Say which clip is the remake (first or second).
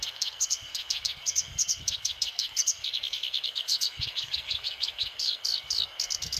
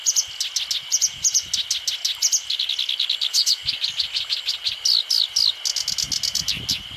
first